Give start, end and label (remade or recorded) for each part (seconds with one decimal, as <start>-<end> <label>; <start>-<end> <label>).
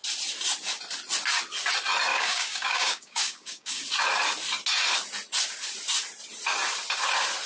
0.0-2.1 recorded; 2.1-3.8 remade; 3.8-7.5 recorded